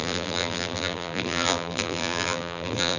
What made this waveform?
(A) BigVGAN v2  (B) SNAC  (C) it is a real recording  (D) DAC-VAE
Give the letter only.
A